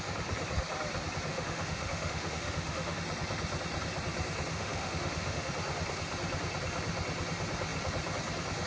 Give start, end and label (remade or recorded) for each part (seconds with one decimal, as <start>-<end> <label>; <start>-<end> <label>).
0.0-1.3 recorded; 1.3-3.0 remade; 3.0-4.5 recorded; 4.5-5.5 remade; 5.5-8.7 recorded